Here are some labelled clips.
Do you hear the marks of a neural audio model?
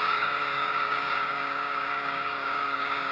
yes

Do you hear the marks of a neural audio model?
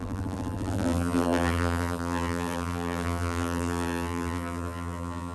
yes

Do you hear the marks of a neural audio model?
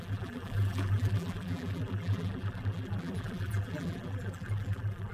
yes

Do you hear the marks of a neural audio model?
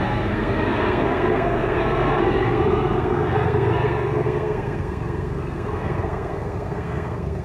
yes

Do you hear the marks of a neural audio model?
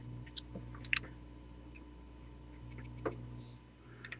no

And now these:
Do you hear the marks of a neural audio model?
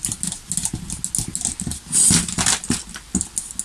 no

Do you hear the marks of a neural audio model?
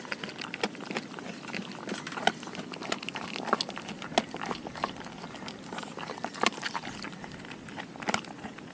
no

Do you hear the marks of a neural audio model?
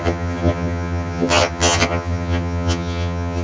yes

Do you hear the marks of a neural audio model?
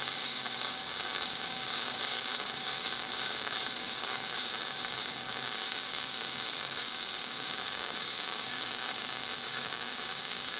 yes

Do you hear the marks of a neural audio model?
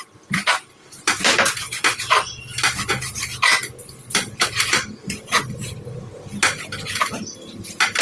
yes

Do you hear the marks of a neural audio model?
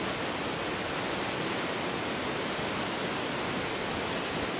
no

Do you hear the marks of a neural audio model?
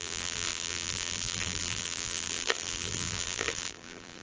yes